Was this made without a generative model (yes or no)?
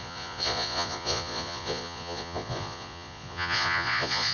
no